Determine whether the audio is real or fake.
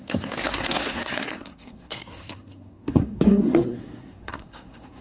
fake